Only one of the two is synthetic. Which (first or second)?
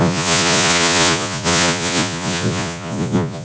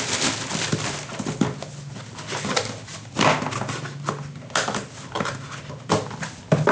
first